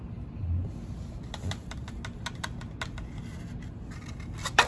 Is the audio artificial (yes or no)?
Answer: no